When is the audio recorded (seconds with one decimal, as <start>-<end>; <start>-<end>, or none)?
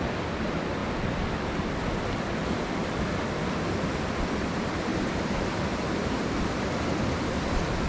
0.8-4.0